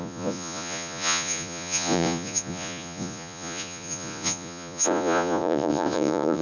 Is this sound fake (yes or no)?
yes